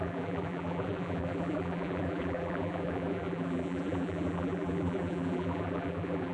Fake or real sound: fake